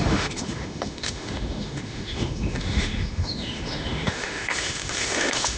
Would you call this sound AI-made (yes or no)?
yes